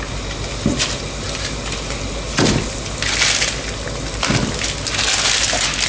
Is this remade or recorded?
recorded